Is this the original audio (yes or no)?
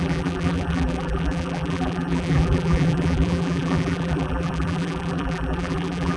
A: no